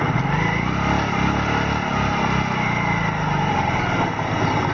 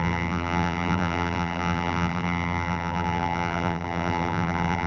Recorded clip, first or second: first